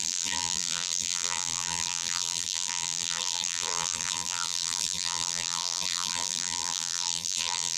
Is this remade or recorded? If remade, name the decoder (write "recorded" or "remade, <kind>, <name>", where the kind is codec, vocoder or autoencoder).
remade, vocoder, BigVGAN v2